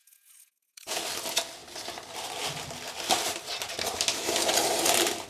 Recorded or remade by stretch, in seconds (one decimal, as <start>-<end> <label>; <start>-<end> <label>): 0.0-1.0 remade; 1.0-5.3 recorded